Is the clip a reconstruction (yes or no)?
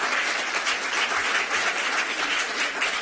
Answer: no